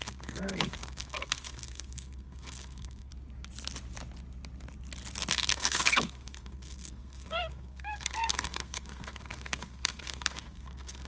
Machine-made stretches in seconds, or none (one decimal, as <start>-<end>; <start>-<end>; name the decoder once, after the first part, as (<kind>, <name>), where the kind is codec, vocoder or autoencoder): 0.0-3.1 (codec, SNAC); 5.3-11.1